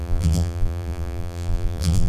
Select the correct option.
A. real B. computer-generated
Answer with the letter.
B